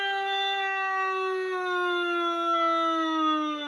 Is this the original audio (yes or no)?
yes